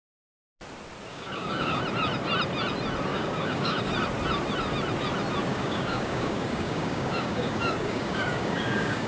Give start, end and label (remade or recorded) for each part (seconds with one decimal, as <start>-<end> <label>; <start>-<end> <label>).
0.0-1.1 recorded; 1.1-1.8 remade; 1.8-3.1 recorded; 3.1-3.9 remade; 3.9-5.5 recorded; 5.5-9.1 remade